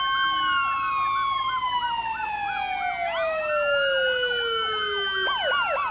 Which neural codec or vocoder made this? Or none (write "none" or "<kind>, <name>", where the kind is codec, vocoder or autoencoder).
none